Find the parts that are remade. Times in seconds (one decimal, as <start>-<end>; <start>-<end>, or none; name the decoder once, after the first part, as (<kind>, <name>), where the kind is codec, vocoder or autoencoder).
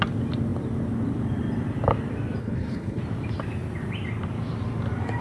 2.4-3.0 (codec, HILCodec)